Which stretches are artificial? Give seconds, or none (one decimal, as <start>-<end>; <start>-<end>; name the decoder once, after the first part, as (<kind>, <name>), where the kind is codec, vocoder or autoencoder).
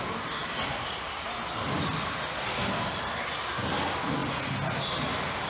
none